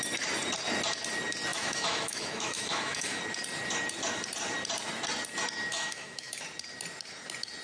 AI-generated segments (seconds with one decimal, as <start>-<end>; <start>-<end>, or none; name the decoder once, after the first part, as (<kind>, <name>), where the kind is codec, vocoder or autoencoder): 1.5-3.2 (autoencoder, DAC-VAE); 5.7-6.4